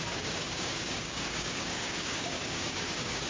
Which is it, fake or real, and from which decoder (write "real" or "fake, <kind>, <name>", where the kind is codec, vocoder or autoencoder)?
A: fake, codec, DAC